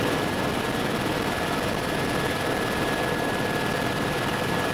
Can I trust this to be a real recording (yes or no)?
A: no